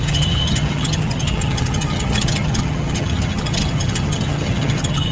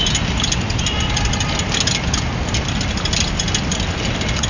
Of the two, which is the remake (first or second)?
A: first